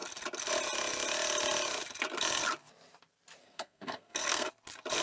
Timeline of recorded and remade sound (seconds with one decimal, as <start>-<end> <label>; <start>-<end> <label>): 0.0-3.4 recorded; 3.4-4.5 remade; 4.5-5.0 recorded